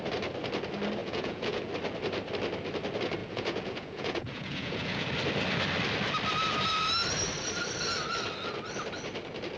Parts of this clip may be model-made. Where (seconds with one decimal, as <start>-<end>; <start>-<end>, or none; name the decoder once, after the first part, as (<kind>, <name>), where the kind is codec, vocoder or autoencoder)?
1.0-1.7 (vocoder, Vocos); 3.2-5.1